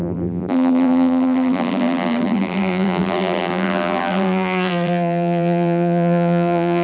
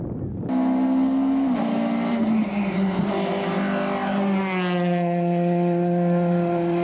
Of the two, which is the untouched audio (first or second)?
second